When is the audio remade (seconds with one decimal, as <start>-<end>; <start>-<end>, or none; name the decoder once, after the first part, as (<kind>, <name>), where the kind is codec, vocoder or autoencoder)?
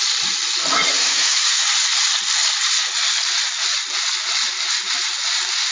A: 1.0-1.6 (autoencoder, DAC-VAE)